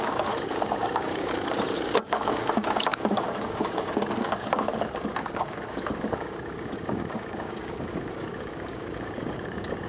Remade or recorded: remade